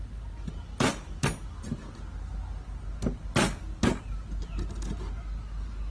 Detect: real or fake real